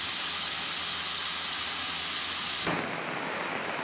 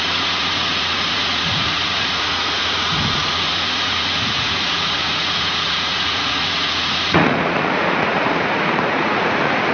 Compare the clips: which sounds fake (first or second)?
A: second